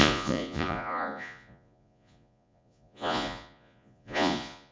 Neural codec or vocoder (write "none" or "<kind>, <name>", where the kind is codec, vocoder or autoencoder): vocoder, Vocos